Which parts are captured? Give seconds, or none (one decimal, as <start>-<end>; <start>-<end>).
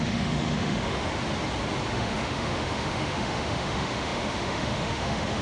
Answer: 1.1-1.9